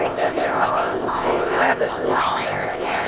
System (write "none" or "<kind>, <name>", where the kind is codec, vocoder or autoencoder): codec, ZipCodec